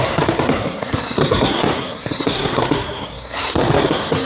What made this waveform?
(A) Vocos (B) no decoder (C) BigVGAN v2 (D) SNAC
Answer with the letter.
D